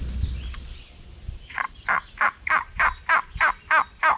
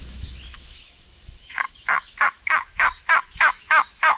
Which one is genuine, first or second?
first